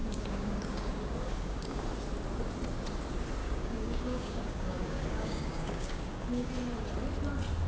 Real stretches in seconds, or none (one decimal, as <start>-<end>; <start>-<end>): 1.8-3.4; 6.5-7.7